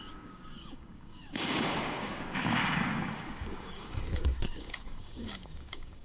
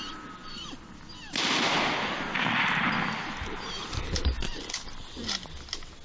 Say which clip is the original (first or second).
second